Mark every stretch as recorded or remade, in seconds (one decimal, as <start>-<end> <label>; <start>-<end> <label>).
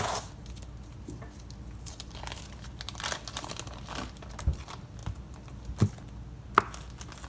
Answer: 0.0-7.3 recorded